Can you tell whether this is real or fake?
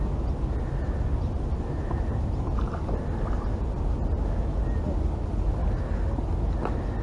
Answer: real